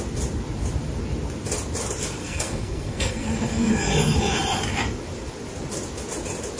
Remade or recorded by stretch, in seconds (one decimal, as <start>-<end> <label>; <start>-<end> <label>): 0.0-2.2 recorded; 2.2-3.7 remade; 3.7-6.6 recorded